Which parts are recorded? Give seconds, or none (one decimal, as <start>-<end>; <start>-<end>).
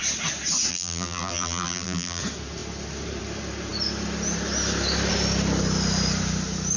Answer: 0.0-0.7; 2.2-6.8